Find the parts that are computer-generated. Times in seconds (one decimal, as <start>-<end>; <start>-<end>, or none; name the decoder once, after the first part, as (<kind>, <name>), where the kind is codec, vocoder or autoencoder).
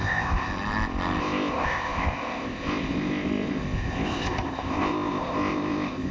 0.0-0.5 (codec, ZipCodec); 1.2-6.1